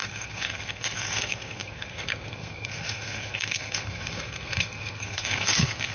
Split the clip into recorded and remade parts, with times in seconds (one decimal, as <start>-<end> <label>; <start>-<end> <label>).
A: 0.0-5.9 remade